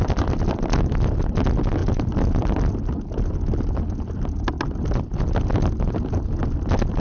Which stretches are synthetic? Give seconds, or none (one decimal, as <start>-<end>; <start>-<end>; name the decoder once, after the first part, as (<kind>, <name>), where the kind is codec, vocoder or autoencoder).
none